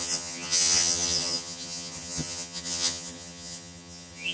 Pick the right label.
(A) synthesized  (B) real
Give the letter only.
A